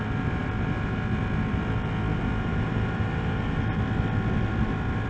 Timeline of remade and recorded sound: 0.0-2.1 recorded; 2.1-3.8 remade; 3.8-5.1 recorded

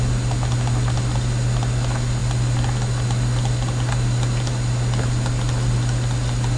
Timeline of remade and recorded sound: 0.0-6.6 recorded

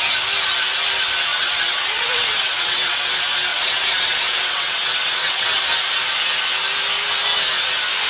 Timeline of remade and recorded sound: 0.0-1.3 recorded; 1.3-3.0 remade; 3.0-3.5 recorded; 3.5-5.6 remade; 5.6-8.1 recorded

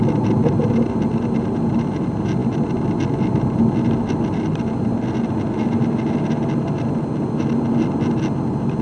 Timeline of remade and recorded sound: 0.0-8.8 recorded

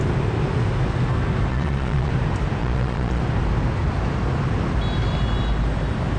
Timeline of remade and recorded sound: 0.0-1.5 recorded; 1.5-2.1 remade; 2.1-2.6 recorded; 2.6-3.2 remade; 3.2-6.2 recorded

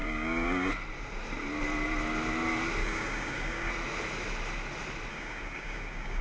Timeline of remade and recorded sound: 0.0-0.7 remade; 0.7-2.8 recorded; 2.8-3.7 remade; 3.7-5.1 recorded; 5.1-6.2 remade